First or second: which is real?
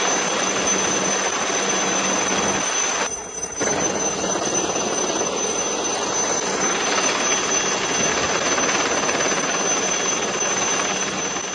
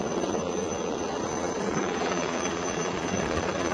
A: first